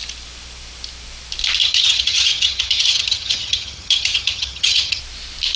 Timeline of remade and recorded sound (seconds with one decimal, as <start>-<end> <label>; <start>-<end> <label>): 0.0-1.6 recorded; 1.6-5.0 remade; 5.0-5.6 recorded